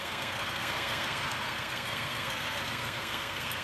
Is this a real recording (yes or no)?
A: no